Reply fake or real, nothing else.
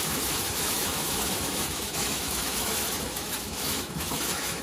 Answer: fake